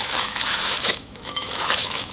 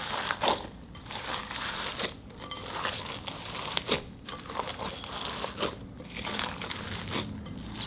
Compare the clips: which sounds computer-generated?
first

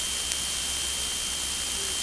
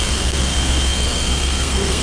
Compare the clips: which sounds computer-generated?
second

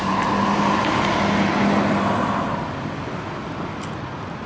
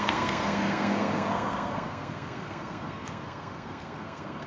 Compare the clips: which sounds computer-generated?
second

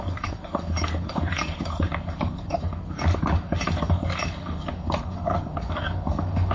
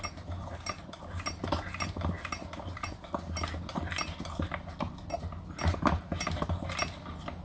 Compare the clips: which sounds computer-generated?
first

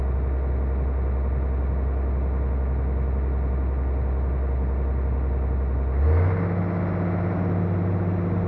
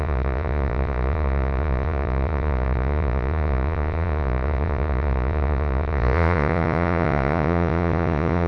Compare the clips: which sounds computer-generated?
second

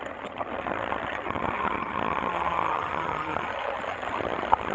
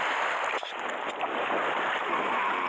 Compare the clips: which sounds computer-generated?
first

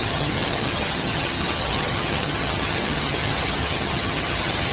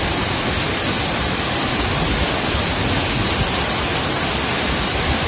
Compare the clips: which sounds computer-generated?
first